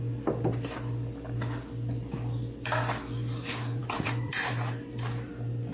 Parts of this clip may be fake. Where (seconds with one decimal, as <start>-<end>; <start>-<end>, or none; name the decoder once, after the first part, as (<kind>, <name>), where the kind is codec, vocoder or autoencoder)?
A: 3.8-4.5 (vocoder, BigVGAN v2)